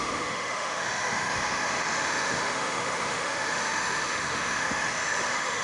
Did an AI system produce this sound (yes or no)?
yes